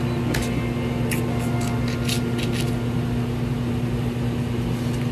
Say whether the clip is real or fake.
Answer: real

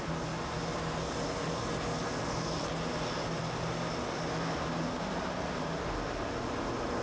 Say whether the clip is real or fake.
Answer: real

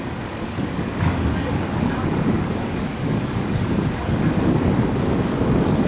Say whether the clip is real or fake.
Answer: fake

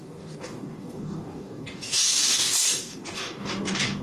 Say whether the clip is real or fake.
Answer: fake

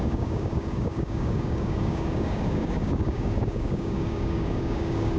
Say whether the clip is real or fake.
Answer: fake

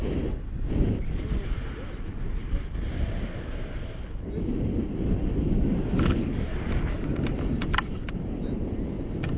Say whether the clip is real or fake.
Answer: real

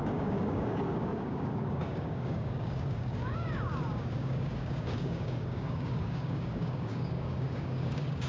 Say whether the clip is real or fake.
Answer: fake